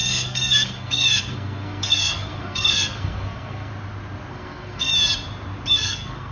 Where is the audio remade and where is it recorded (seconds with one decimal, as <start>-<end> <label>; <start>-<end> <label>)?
0.0-3.7 remade; 3.7-4.3 recorded; 4.3-4.9 remade; 4.9-5.7 recorded; 5.7-6.3 remade